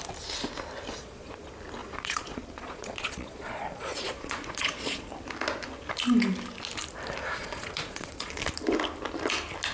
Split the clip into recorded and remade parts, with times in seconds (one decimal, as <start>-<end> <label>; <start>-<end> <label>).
0.0-0.9 recorded; 0.9-1.4 remade; 1.4-1.8 recorded; 1.8-5.1 remade; 5.1-7.4 recorded; 7.4-8.3 remade; 8.3-9.7 recorded